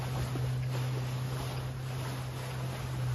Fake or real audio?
real